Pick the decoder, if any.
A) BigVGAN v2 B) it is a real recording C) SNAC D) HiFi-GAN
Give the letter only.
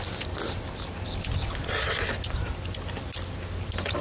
B